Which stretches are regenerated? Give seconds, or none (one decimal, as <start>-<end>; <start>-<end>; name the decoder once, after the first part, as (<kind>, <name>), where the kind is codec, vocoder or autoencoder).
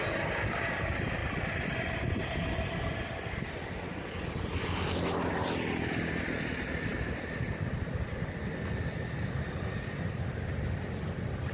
none